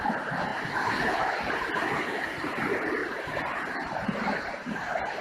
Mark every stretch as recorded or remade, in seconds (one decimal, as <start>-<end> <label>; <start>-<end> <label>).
0.0-0.5 recorded; 0.5-1.5 remade; 1.5-3.0 recorded; 3.0-5.2 remade